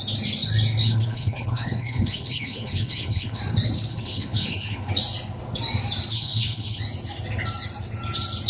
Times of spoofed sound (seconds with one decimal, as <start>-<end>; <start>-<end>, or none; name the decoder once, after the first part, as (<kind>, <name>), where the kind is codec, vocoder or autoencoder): 0.8-3.4 (codec, HILCodec); 3.9-4.9; 6.1-6.8